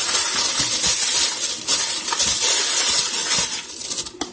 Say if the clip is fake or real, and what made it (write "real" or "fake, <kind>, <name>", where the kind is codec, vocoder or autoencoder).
real